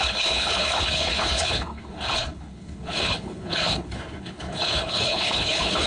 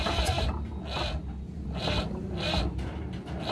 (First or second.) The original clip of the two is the second